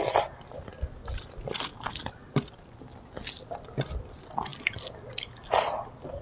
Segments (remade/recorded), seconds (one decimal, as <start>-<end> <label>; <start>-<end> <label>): 0.0-6.2 recorded